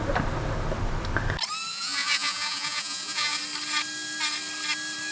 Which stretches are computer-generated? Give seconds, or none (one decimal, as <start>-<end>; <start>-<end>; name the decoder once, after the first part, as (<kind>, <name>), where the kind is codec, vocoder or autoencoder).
1.7-3.4 (vocoder, Vocos)